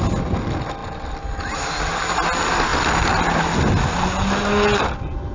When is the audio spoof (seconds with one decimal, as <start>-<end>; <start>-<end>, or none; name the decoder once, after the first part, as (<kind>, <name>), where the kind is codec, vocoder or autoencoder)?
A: none